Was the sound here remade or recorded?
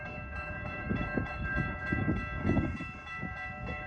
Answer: remade